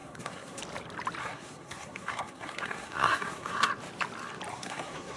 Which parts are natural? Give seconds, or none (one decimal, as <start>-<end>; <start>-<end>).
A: 0.6-1.2; 3.7-4.5